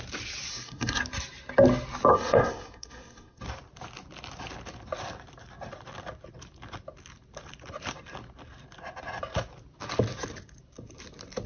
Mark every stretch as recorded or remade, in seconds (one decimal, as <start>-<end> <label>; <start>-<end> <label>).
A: 0.0-0.5 recorded; 0.5-1.0 remade; 1.0-2.1 recorded; 2.1-3.4 remade; 3.4-11.5 recorded